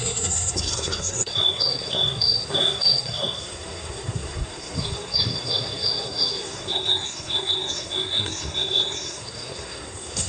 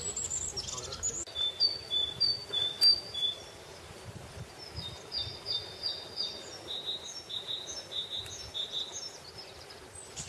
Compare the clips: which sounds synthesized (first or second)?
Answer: first